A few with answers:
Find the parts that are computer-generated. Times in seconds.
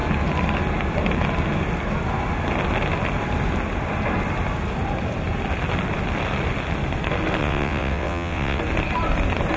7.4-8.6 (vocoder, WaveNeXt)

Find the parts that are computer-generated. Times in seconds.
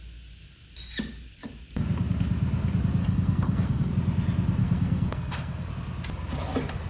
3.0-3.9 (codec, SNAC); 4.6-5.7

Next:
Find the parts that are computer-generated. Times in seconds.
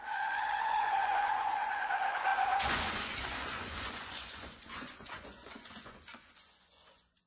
0.0-7.3 (vocoder, Vocos)